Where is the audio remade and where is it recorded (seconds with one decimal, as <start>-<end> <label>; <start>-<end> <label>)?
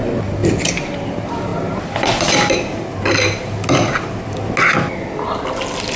0.0-6.0 recorded